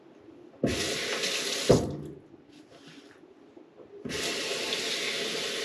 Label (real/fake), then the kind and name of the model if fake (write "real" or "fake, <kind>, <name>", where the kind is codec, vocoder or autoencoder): real